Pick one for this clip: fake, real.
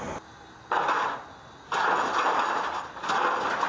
real